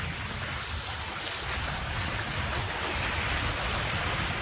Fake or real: real